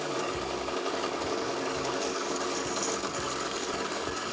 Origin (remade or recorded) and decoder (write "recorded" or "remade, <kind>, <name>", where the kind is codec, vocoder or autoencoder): remade, codec, DAC